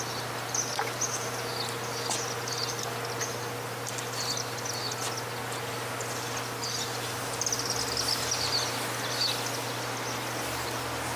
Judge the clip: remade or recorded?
recorded